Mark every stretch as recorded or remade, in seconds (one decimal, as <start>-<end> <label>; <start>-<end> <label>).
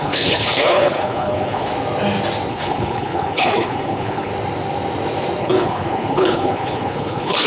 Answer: 0.0-1.7 remade; 1.7-2.5 recorded; 2.5-4.3 remade; 4.3-5.4 recorded; 5.4-7.5 remade